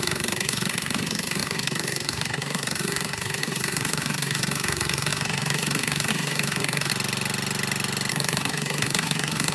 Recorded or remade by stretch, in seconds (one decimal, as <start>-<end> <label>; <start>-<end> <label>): 0.0-6.9 remade; 6.9-8.1 recorded; 8.1-9.5 remade